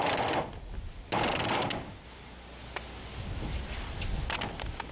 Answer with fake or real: real